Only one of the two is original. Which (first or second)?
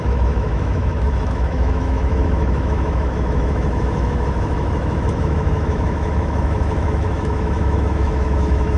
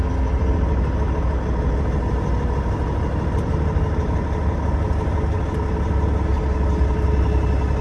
second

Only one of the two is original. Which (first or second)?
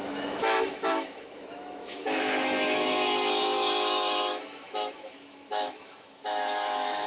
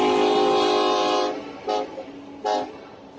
second